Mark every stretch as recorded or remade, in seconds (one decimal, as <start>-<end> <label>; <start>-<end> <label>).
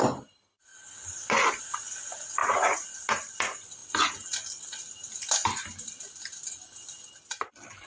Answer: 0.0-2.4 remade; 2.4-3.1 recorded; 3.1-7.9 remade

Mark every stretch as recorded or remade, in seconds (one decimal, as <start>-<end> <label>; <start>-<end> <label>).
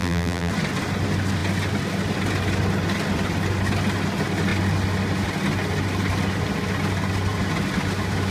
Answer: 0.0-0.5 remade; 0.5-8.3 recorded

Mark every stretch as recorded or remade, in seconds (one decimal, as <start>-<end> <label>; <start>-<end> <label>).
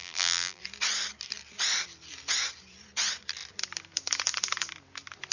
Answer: 0.0-0.6 remade; 0.6-5.3 recorded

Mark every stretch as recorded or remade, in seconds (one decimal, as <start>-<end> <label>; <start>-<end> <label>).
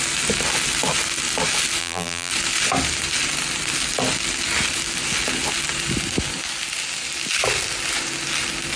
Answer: 0.0-1.8 recorded; 1.8-2.3 remade; 2.3-8.8 recorded